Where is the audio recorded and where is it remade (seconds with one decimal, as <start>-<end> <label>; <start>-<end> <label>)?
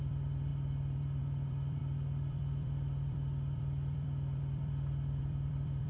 0.0-5.9 remade